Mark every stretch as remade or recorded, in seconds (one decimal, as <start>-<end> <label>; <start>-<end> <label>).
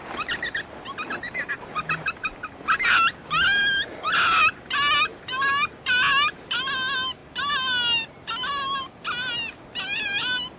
0.0-10.6 recorded